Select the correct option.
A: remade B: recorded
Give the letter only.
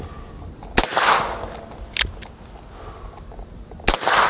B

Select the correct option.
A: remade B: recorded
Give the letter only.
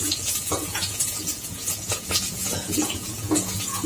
A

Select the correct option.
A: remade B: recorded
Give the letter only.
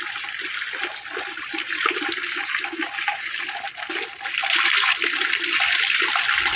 B